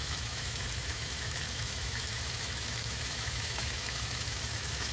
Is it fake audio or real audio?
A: fake